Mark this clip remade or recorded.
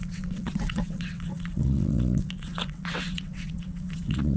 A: remade